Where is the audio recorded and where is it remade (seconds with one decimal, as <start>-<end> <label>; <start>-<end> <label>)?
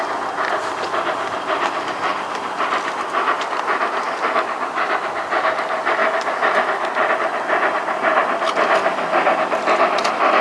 0.0-10.4 recorded